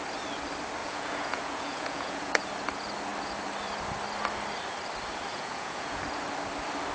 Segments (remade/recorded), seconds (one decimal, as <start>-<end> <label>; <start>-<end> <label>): 0.0-0.8 recorded; 0.8-2.4 remade; 2.4-5.3 recorded; 5.3-6.0 remade; 6.0-6.9 recorded